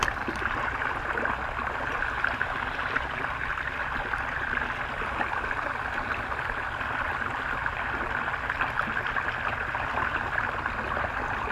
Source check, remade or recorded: recorded